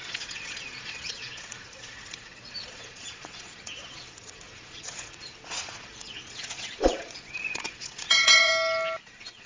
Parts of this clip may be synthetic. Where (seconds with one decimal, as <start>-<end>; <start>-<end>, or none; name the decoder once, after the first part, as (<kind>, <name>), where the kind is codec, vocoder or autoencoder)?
0.0-8.5 (vocoder, Vocos); 9.0-9.5